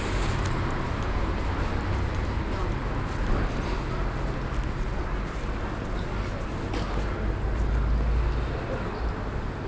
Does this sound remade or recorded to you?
recorded